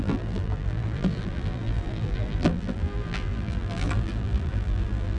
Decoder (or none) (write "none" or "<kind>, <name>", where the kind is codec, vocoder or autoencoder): vocoder, BigVGAN v2